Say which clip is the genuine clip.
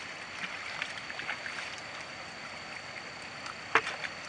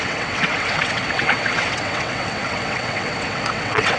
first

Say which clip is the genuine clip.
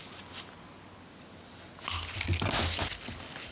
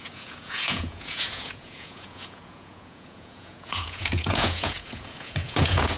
first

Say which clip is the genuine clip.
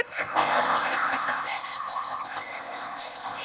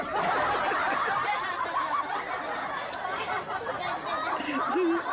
second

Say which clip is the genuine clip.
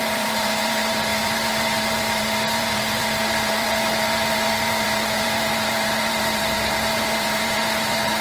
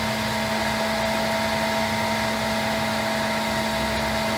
second